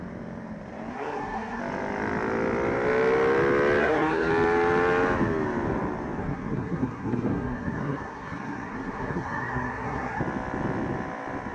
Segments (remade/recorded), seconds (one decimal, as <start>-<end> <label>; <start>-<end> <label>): 0.0-0.9 recorded; 0.9-1.6 remade; 1.6-3.8 recorded; 3.8-4.3 remade; 4.3-6.2 recorded; 6.2-10.2 remade; 10.2-11.5 recorded

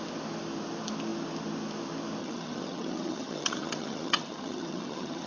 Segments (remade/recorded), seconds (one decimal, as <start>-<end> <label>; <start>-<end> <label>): 0.0-2.2 recorded; 2.2-5.3 remade

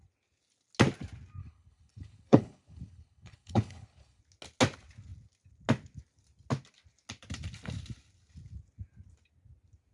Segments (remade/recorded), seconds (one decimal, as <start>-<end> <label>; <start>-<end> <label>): 0.0-1.4 recorded; 1.4-4.2 remade; 4.2-9.9 recorded

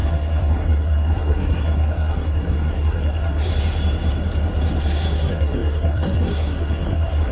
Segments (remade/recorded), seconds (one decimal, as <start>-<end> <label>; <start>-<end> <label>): 0.0-3.5 remade; 3.5-4.8 recorded; 4.8-7.3 remade